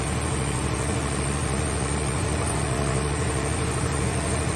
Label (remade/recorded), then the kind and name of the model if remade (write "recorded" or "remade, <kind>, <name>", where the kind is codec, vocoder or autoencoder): remade, vocoder, Vocos